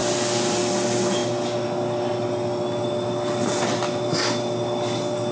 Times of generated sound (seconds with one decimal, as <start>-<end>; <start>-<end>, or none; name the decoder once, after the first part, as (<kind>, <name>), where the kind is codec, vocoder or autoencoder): none